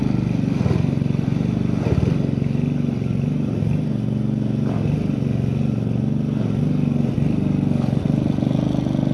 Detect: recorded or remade recorded